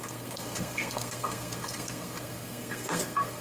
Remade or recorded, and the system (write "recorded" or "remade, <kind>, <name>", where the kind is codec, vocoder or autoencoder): remade, codec, SNAC